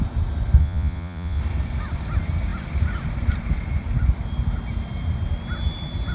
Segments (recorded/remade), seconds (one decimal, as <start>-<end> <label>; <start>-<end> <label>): 0.0-0.6 recorded; 0.6-1.4 remade; 1.4-6.1 recorded